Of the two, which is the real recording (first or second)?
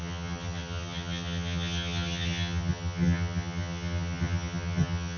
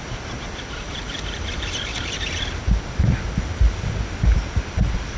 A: second